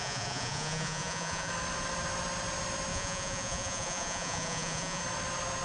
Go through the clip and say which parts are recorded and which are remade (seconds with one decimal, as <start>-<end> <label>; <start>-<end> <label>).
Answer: 0.0-1.5 remade; 1.5-2.9 recorded; 2.9-5.0 remade; 5.0-5.6 recorded